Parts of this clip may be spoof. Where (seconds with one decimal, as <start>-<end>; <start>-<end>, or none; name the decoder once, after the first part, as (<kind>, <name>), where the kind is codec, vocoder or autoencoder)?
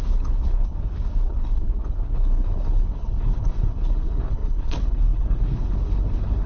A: 0.0-6.5 (codec, HILCodec)